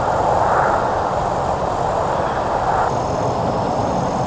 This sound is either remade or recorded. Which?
recorded